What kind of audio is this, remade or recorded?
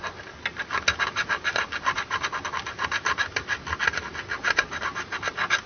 recorded